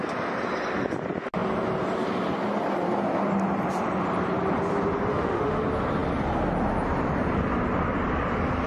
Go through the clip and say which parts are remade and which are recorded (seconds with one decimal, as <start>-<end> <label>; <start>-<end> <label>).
0.0-5.1 recorded; 5.1-5.6 remade; 5.6-8.7 recorded